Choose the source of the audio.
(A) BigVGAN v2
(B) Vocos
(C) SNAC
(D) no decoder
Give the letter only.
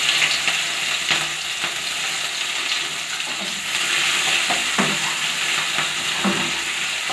D